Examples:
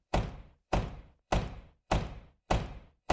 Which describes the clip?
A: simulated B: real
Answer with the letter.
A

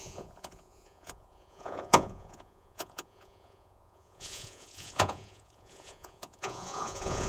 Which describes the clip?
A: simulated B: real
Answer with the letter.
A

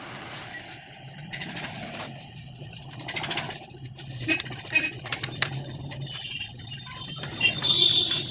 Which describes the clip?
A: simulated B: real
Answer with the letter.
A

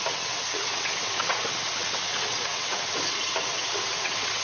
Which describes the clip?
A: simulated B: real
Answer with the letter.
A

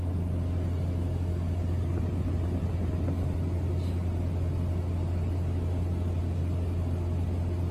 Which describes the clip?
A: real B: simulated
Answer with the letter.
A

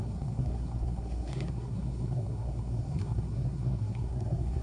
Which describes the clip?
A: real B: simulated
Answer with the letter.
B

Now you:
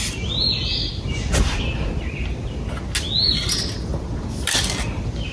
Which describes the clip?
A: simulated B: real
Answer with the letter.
B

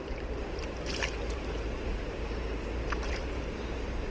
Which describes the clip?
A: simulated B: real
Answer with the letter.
A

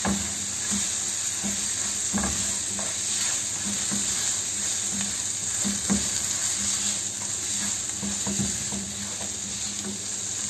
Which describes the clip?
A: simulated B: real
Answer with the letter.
B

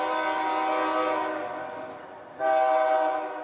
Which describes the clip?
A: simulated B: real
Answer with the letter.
B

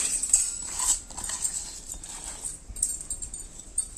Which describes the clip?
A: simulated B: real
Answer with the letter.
A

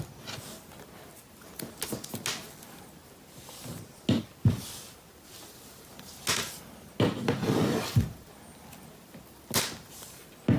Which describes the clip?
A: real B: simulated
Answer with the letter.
A